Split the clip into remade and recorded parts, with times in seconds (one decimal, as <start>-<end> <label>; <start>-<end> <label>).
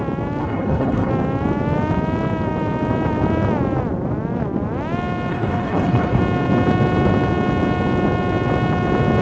0.0-0.4 recorded; 0.4-1.1 remade; 1.1-5.3 recorded; 5.3-6.2 remade; 6.2-9.2 recorded